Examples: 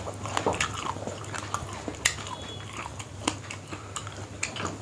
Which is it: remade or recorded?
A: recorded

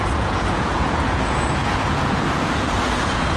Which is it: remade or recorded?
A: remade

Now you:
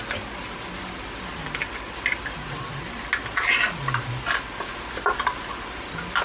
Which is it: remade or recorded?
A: recorded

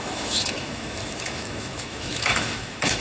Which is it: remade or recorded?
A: remade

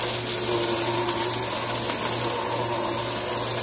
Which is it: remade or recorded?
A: recorded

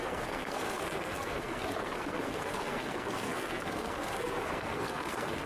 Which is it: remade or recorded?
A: remade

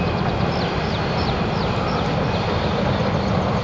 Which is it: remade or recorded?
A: recorded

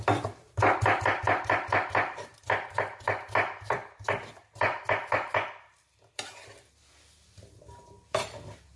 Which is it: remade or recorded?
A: recorded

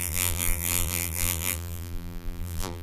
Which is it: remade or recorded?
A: remade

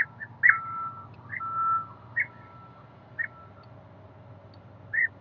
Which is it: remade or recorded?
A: recorded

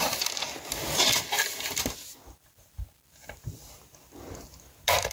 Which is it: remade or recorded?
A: recorded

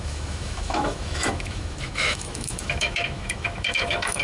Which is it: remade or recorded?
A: remade